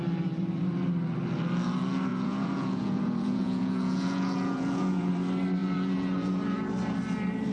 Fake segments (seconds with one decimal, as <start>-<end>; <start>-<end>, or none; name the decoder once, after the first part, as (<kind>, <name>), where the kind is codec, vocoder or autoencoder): 2.1-5.1 (vocoder, Vocos); 5.6-6.7